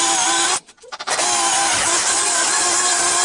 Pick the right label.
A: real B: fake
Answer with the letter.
B